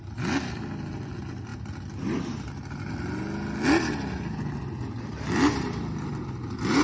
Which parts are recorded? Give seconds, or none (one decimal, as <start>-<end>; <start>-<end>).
0.0-6.8